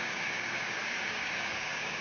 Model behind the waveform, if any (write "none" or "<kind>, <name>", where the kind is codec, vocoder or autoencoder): codec, DAC